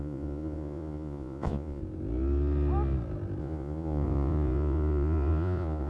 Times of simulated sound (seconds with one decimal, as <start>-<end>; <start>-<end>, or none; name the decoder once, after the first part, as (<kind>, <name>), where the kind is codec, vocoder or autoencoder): 0.0-1.8 (vocoder, Vocos); 3.4-5.9